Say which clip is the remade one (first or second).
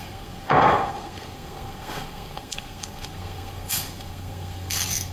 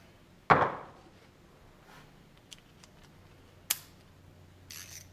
first